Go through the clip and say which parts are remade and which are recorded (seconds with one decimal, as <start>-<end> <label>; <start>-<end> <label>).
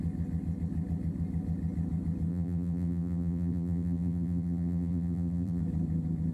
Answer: 0.0-2.3 recorded; 2.3-5.6 remade; 5.6-6.3 recorded